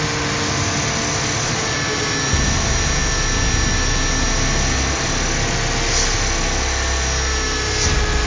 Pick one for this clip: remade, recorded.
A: recorded